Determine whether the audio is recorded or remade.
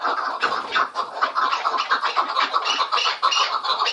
recorded